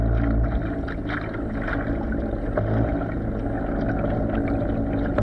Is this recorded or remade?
recorded